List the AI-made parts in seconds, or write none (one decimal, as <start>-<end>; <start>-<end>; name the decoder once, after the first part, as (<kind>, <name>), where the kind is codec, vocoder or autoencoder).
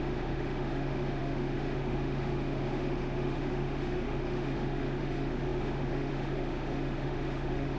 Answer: 0.0-7.8 (autoencoder, DAC-VAE)